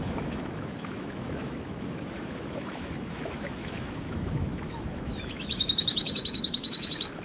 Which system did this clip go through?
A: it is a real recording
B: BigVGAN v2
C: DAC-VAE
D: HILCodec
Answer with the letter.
C